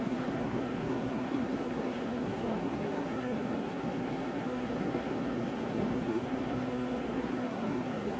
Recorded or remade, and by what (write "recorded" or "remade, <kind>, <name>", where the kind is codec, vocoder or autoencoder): remade, codec, SNAC